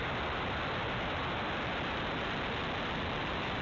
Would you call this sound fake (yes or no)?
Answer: no